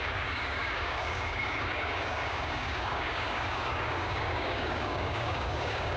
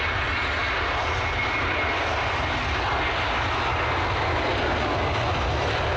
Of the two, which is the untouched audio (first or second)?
second